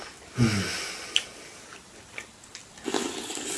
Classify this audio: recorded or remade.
recorded